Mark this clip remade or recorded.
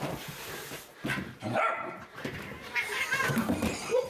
remade